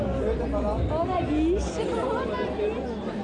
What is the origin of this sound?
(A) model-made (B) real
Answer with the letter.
B